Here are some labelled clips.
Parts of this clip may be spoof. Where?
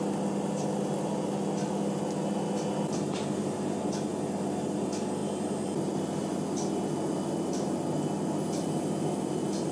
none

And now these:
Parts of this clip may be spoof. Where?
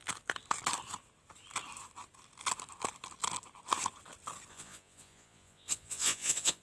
4.5-6.6 (vocoder, Vocos)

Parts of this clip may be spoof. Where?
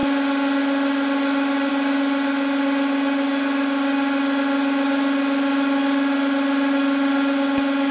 none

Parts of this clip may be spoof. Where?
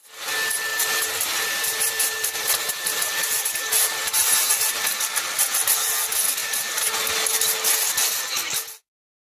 0.7-5.0 (vocoder, BigVGAN v2); 6.4-6.9